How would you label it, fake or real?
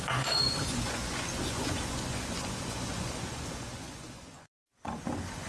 fake